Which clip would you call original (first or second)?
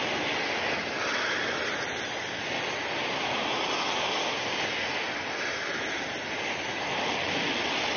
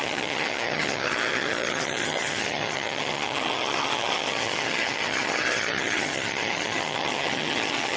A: first